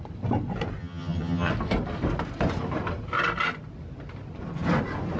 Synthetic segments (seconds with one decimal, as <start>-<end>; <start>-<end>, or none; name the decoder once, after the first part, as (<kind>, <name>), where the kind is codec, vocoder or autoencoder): 0.8-1.5 (vocoder, HiFi-GAN)